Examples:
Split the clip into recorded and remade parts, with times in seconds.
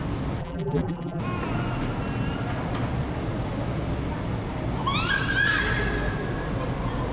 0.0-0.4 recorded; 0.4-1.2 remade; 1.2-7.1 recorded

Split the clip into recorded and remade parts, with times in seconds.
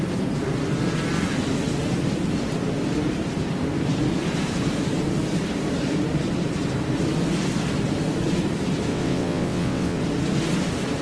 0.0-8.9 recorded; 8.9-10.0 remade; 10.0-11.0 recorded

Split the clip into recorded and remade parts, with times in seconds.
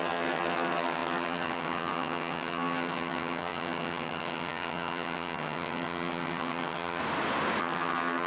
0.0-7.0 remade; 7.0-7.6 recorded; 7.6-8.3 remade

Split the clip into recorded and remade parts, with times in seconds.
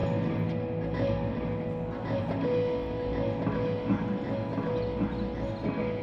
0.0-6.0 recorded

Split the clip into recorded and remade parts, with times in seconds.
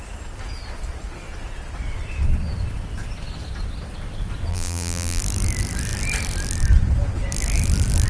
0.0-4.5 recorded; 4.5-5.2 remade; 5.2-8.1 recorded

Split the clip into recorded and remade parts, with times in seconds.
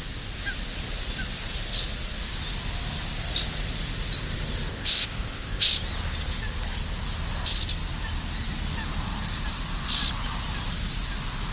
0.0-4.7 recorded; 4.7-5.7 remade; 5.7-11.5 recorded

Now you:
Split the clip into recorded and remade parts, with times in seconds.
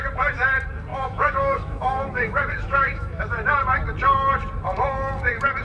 0.0-0.9 recorded; 0.9-3.2 remade; 3.2-5.6 recorded